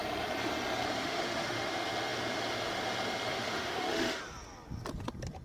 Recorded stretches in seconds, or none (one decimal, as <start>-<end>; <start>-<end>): 0.0-1.0; 1.7-3.3; 4.2-5.4